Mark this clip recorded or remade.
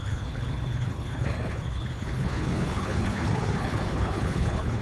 remade